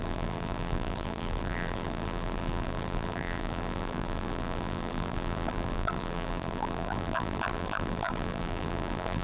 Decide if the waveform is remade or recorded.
remade